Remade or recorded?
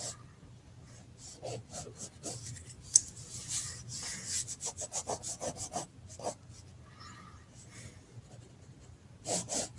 recorded